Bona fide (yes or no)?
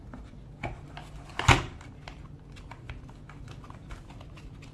yes